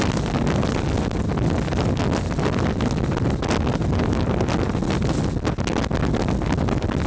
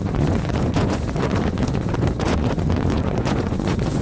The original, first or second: first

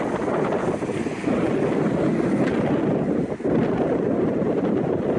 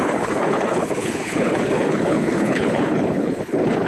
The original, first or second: first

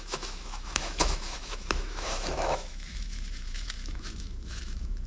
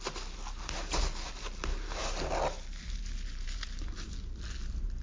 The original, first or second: second